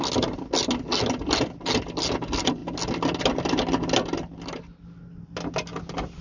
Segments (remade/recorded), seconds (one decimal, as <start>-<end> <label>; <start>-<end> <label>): 0.0-6.2 recorded